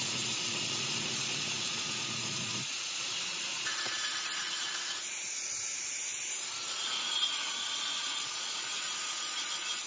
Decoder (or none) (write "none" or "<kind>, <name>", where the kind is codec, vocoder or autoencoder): vocoder, Vocos